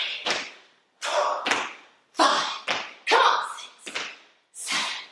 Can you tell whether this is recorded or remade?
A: recorded